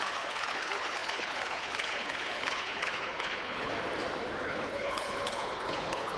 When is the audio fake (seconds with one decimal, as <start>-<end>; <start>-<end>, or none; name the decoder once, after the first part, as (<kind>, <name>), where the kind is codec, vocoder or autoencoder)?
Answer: 0.0-3.7 (codec, HILCodec); 4.4-6.2

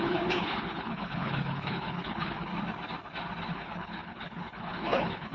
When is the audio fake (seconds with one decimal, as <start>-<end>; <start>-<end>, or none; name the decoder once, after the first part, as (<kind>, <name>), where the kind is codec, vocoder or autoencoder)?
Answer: 0.0-2.5 (codec, HILCodec); 3.5-5.3

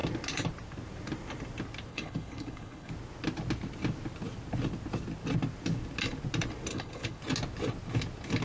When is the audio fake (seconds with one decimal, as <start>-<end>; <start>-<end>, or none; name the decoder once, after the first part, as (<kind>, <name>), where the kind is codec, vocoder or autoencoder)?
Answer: 1.9-2.9 (codec, HILCodec); 6.7-7.2

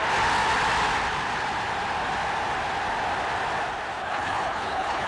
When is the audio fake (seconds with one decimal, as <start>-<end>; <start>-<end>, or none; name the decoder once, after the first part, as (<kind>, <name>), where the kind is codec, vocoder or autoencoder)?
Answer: 4.0-5.1 (codec, HILCodec)